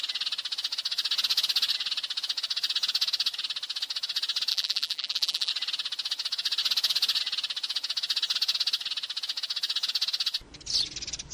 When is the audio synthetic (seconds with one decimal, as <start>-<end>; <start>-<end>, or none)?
4.5-5.5